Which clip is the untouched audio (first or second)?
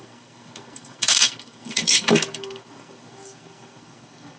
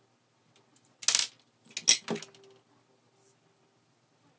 second